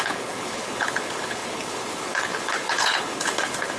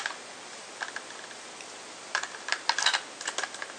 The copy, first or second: first